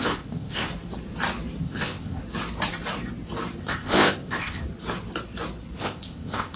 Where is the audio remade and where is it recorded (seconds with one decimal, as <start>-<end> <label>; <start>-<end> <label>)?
0.0-0.7 remade; 0.7-1.6 recorded; 1.6-2.2 remade; 2.2-3.6 recorded; 3.6-4.6 remade; 4.6-5.8 recorded; 5.8-6.6 remade